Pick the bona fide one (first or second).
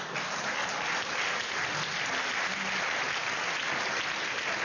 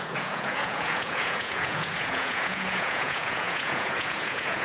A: first